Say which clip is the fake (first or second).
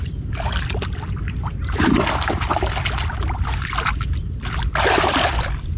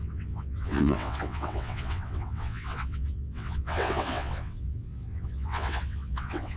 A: second